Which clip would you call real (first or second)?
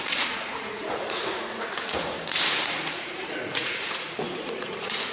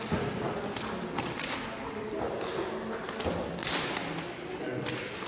second